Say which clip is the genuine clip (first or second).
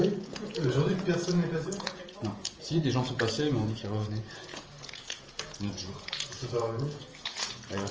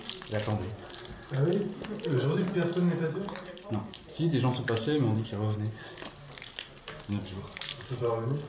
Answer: second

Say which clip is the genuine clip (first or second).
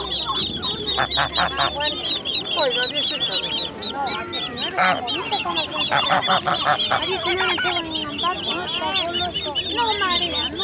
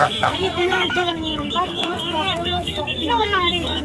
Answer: first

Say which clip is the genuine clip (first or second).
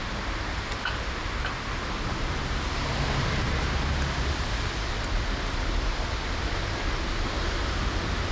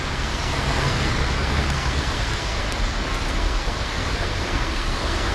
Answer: first